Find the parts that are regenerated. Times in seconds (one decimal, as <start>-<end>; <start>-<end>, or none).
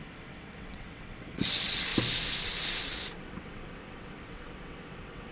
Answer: 0.0-1.9; 2.8-5.3